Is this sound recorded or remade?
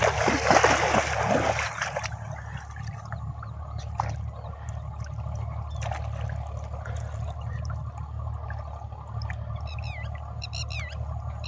recorded